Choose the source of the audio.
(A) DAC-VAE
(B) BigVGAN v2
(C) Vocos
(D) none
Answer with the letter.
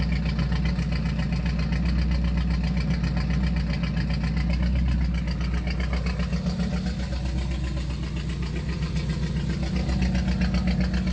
D